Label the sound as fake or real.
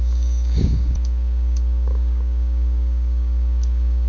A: fake